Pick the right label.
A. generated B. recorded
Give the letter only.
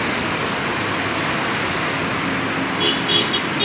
B